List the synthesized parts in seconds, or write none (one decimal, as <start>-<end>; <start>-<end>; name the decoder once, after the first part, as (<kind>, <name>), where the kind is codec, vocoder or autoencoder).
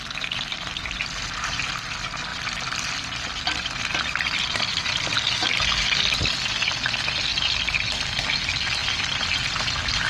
none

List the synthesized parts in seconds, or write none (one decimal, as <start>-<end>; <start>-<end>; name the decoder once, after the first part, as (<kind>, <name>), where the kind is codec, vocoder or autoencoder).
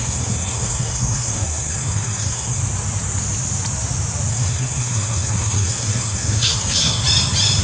0.0-2.6 (codec, SNAC); 4.3-7.0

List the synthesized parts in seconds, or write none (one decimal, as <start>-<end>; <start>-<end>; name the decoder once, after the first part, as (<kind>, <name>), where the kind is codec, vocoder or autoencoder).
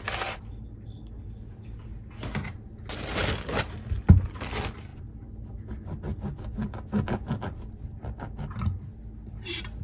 none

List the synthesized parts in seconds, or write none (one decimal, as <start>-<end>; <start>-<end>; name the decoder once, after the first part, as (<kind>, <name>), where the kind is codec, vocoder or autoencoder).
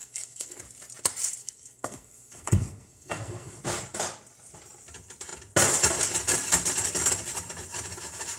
0.0-0.6 (codec, SNAC); 1.4-3.6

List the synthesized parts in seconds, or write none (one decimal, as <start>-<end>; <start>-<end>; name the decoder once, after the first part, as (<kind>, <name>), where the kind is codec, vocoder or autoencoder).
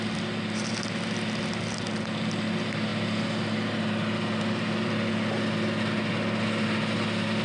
none